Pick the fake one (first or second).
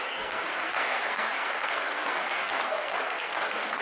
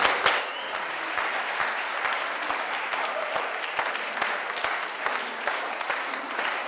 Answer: first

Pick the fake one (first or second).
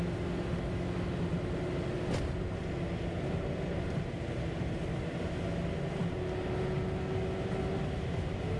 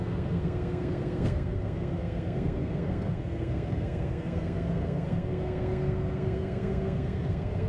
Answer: second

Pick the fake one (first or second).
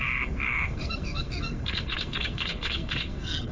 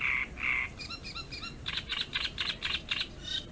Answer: first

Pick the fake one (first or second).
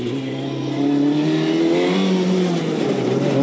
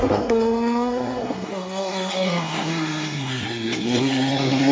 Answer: second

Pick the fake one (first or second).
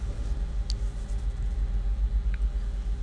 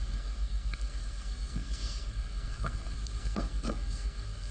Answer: second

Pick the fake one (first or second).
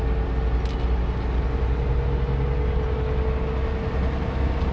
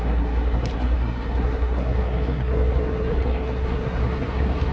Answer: second